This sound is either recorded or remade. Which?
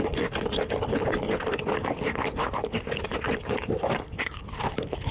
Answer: recorded